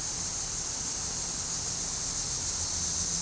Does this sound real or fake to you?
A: real